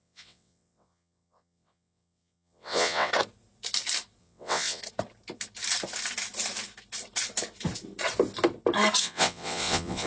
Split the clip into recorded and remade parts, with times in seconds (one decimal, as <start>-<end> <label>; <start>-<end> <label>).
0.0-3.1 remade; 3.1-4.2 recorded; 4.2-4.8 remade; 4.8-9.0 recorded; 9.0-10.1 remade